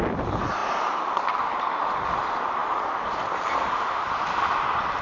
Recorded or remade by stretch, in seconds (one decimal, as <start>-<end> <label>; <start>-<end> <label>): 0.0-5.0 recorded